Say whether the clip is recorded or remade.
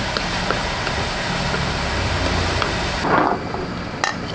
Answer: recorded